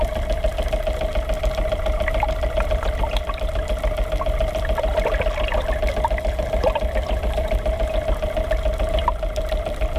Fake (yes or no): yes